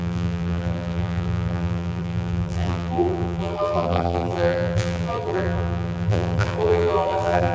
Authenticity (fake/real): fake